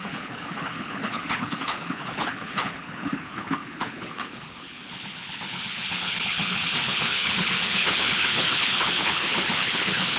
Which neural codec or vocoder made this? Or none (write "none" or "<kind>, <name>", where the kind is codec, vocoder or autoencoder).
codec, HILCodec